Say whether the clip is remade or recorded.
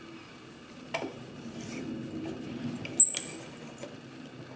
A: recorded